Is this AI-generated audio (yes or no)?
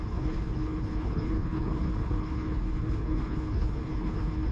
yes